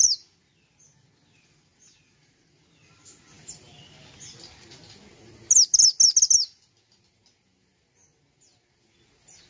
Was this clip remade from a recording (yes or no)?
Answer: no